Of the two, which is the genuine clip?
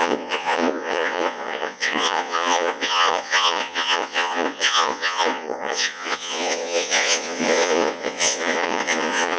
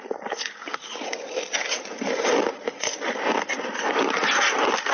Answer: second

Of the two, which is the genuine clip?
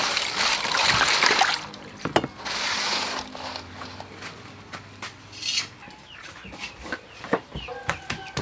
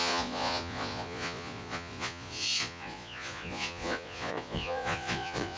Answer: first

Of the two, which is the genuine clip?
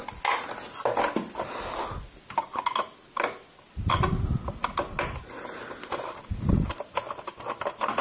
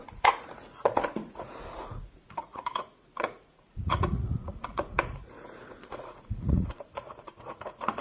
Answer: first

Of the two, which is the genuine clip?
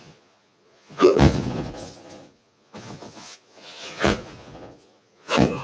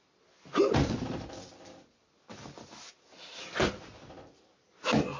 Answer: second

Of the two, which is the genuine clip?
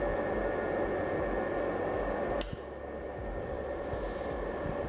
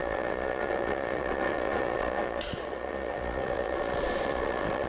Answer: first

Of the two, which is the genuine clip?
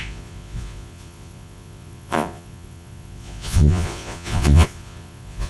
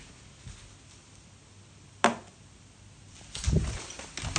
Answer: second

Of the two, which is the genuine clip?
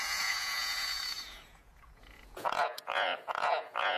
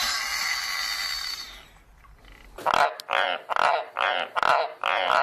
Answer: second